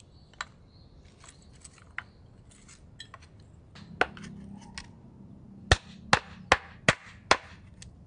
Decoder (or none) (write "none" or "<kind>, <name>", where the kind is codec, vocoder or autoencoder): none